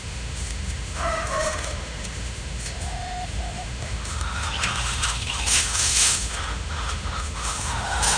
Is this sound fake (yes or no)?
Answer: yes